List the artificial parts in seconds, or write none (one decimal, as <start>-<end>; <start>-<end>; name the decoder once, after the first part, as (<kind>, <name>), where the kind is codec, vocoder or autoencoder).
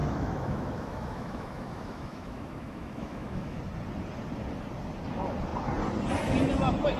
0.0-3.6 (autoencoder, DAC-VAE)